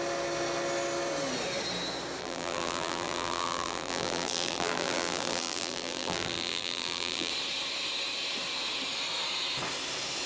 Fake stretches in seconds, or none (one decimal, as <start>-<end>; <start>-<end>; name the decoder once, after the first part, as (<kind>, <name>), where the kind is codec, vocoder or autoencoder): 2.2-7.3 (vocoder, BigVGAN v2)